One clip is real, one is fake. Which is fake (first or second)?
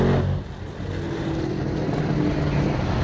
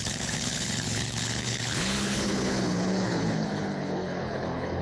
second